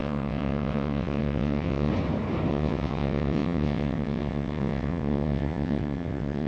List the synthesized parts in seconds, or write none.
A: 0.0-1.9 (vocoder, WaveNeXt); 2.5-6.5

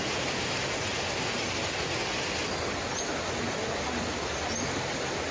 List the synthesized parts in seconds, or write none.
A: none

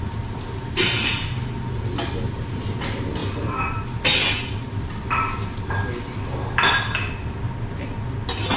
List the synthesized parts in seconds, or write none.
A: none

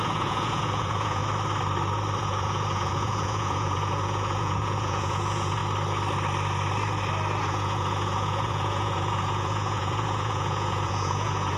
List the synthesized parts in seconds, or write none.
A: 0.0-1.2 (vocoder, Vocos); 2.2-5.6; 7.4-11.6